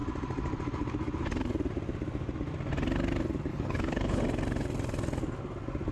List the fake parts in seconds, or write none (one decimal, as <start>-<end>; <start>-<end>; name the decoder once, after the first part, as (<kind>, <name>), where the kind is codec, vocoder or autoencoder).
3.5-4.2 (codec, HILCodec)